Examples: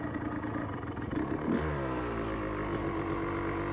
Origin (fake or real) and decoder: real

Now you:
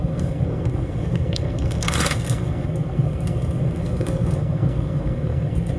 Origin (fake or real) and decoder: fake, codec, SNAC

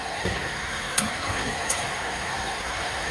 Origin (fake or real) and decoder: fake, codec, SNAC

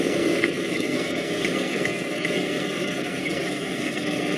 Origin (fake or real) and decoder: fake, codec, SNAC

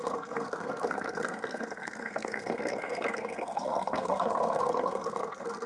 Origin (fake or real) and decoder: fake, codec, SNAC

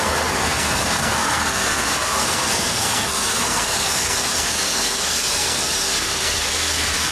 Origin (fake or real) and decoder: fake, codec, SNAC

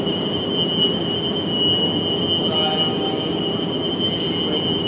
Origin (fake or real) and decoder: real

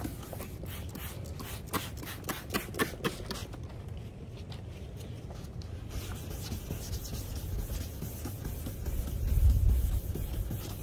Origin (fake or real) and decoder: real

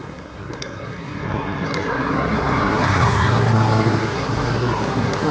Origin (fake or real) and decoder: fake, codec, SNAC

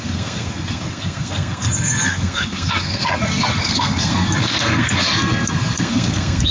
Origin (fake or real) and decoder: fake, codec, SNAC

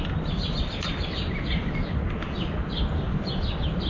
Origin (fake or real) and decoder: real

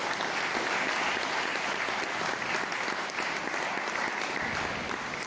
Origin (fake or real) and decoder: real